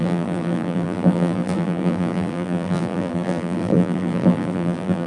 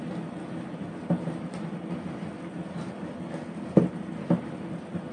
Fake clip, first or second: first